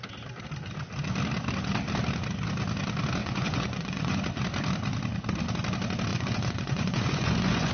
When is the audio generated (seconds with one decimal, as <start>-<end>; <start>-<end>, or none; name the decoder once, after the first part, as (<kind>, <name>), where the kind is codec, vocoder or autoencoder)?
3.2-4.2 (vocoder, Vocos); 6.1-7.7